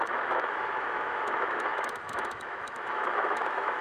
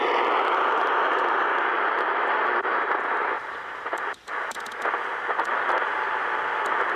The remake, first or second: first